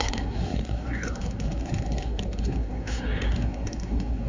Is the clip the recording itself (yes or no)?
no